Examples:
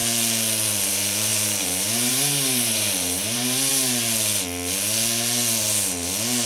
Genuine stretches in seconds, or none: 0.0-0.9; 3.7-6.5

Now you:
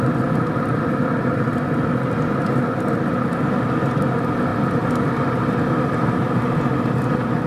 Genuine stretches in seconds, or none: 0.0-7.5

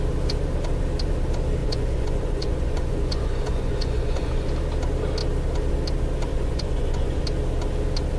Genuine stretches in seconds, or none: 0.0-1.6; 4.5-6.3; 7.2-8.2

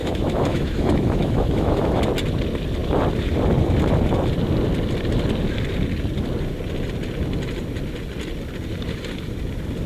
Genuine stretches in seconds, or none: 2.0-9.9